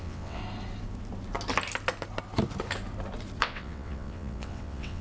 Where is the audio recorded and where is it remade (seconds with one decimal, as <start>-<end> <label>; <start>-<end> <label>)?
0.0-0.4 remade; 0.4-3.4 recorded; 3.4-5.0 remade